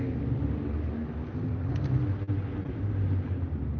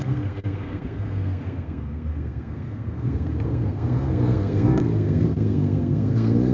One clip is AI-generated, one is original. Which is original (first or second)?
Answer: first